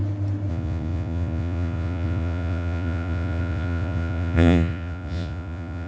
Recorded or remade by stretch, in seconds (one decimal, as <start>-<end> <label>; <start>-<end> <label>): 0.0-0.5 recorded; 0.5-5.9 remade